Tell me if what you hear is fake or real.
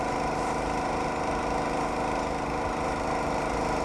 real